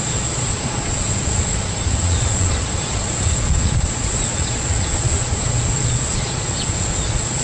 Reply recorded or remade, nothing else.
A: remade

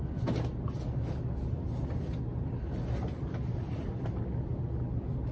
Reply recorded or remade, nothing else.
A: recorded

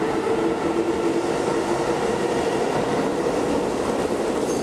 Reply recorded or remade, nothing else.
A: recorded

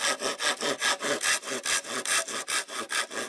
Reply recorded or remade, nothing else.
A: recorded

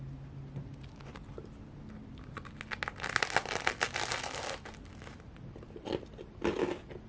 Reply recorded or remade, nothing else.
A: recorded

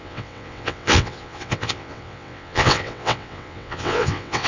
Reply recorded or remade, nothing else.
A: remade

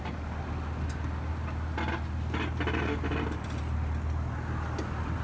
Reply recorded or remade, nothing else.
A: recorded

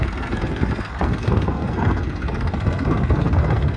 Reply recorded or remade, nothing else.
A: remade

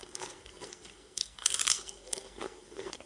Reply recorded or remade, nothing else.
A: remade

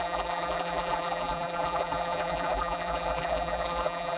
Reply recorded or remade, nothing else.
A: remade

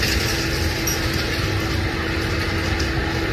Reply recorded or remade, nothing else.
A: recorded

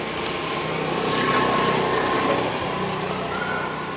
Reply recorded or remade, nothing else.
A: recorded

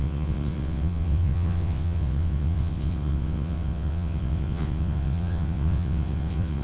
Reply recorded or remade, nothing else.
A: remade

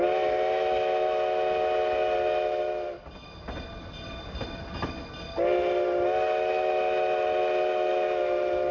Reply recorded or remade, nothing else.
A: recorded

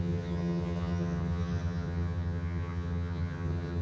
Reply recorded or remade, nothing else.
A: remade